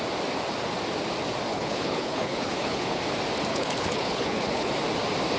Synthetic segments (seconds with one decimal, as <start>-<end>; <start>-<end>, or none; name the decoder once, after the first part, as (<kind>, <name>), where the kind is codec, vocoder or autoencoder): 1.5-3.0 (codec, HILCodec); 3.5-4.7